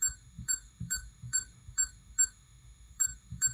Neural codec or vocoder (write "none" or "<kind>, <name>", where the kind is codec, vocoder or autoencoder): autoencoder, DAC-VAE